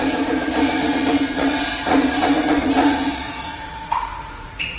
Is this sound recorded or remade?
remade